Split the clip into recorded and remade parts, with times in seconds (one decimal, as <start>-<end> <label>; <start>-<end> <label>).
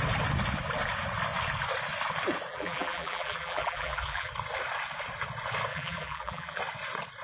0.0-2.5 recorded; 2.5-4.3 remade; 4.3-5.7 recorded; 5.7-6.6 remade; 6.6-7.2 recorded